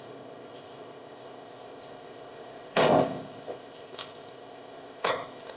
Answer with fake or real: fake